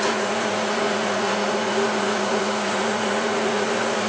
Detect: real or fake fake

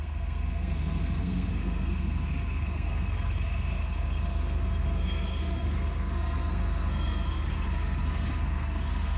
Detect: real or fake fake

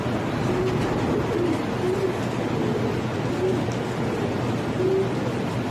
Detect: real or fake real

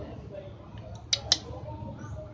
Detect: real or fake real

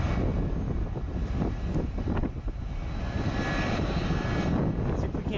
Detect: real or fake real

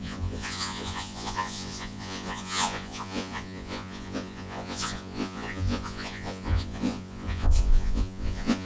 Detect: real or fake fake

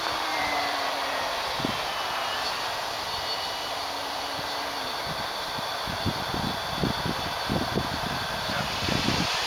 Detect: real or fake fake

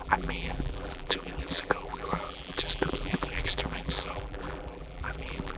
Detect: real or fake fake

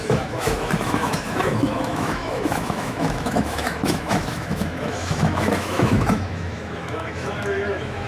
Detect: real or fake fake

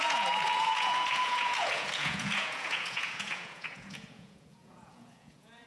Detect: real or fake fake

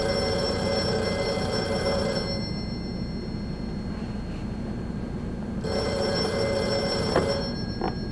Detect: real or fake real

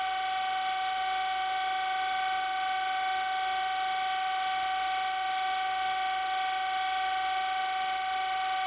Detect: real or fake real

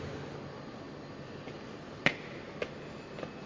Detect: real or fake real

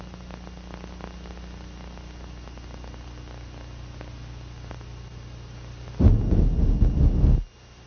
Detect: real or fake real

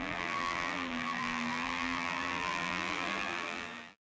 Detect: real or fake fake